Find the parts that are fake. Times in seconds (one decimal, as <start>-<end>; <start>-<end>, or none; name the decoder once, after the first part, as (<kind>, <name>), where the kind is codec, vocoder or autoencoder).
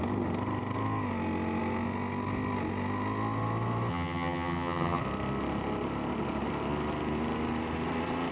3.9-5.0 (vocoder, HiFi-GAN)